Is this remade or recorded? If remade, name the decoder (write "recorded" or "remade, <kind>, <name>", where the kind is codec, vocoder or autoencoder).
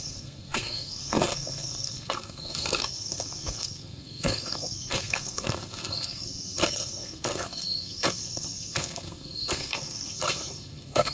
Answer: remade, codec, SNAC